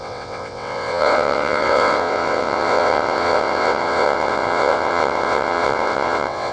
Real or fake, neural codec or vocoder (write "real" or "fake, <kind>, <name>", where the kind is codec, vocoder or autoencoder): fake, vocoder, WaveNeXt